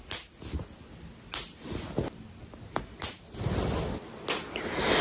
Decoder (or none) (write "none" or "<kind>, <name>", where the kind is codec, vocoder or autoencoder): none